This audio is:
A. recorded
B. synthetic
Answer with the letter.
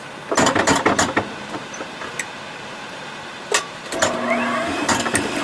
A